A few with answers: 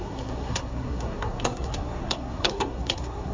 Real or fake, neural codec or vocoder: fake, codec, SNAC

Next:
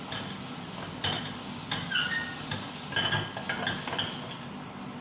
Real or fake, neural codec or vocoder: real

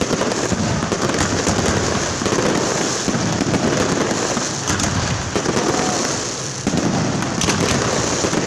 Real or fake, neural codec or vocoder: real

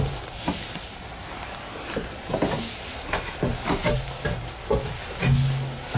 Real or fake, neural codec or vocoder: real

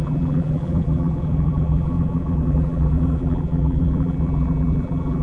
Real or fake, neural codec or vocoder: fake, vocoder, BigVGAN v2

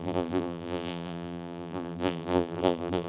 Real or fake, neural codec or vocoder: fake, vocoder, BigVGAN v2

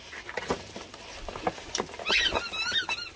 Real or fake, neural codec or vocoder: real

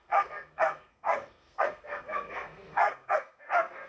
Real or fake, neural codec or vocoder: fake, codec, SNAC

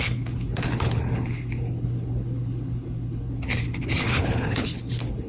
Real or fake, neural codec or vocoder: fake, codec, HILCodec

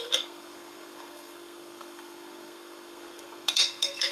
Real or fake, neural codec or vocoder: fake, codec, SNAC